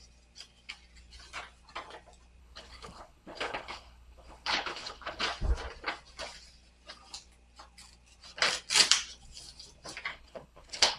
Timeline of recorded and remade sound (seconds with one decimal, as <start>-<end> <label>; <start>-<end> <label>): 0.0-2.4 recorded; 2.4-5.2 remade; 5.2-10.1 recorded; 10.1-11.0 remade